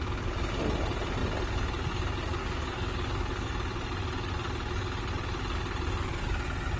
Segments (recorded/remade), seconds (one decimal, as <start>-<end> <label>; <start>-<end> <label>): 0.0-2.4 recorded; 2.4-3.5 remade; 3.5-6.8 recorded